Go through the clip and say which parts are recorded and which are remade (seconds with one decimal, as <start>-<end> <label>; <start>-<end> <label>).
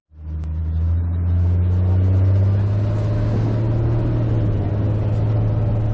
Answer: 0.0-5.9 recorded